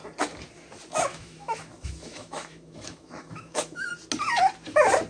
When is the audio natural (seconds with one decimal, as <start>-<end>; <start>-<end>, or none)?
0.0-1.1; 3.9-5.1